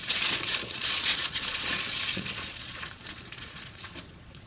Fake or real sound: fake